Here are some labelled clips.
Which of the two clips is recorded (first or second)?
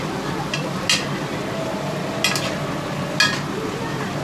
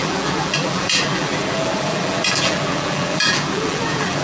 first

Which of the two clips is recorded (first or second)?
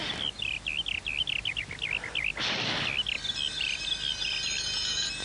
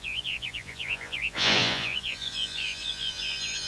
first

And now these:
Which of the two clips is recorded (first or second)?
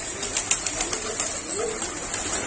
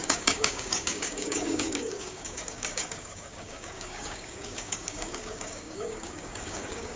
first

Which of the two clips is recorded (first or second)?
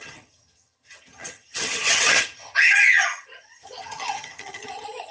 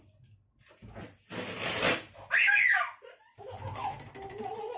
second